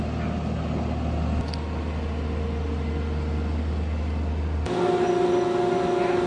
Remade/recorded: recorded